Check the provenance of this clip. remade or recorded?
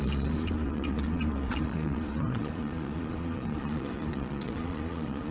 remade